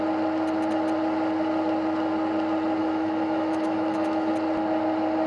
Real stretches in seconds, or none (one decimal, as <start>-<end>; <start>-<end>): 0.0-2.8; 4.3-5.3